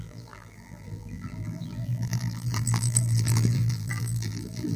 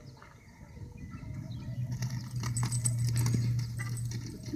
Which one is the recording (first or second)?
second